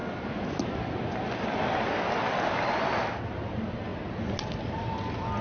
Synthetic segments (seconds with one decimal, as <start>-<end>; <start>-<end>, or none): none